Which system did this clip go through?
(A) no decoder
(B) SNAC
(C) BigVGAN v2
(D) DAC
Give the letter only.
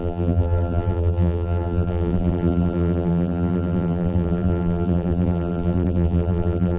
C